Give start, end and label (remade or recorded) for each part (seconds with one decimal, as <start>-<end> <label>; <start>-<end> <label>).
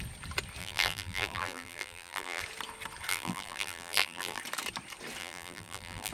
0.0-0.6 recorded; 0.6-2.4 remade; 2.4-3.1 recorded; 3.1-4.4 remade; 4.4-5.2 recorded; 5.2-6.1 remade